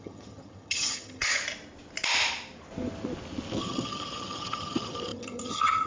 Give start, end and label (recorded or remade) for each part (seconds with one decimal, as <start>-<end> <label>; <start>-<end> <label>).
0.0-1.4 remade; 1.4-3.6 recorded; 3.6-5.9 remade